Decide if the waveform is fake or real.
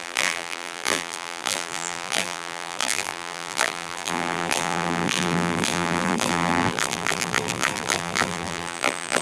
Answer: fake